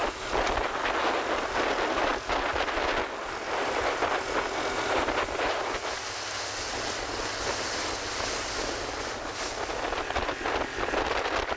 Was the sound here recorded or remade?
recorded